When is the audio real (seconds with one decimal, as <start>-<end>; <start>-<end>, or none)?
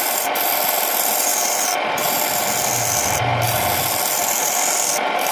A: 0.0-5.3